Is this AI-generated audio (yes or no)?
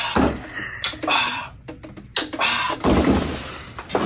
no